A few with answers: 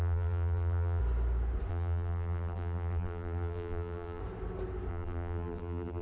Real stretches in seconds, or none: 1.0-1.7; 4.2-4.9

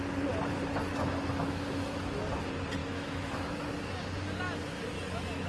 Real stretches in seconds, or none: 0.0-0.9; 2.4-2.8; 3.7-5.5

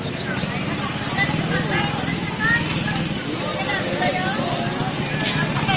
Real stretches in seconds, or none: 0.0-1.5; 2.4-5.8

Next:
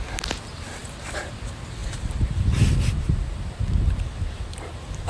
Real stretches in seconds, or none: 0.0-1.8

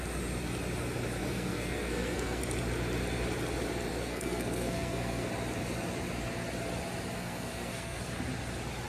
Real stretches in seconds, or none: 0.0-1.2; 2.4-3.9; 5.3-7.2; 8.1-8.9